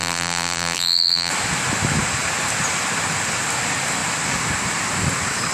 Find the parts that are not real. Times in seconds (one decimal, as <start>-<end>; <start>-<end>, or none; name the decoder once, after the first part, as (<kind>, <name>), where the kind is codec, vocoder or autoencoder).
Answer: 0.0-1.3 (vocoder, BigVGAN v2)